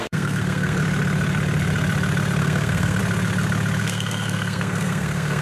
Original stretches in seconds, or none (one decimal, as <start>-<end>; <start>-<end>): 0.8-2.4; 3.0-3.8